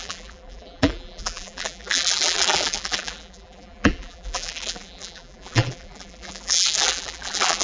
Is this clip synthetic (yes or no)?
yes